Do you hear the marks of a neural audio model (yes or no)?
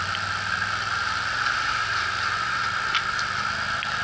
no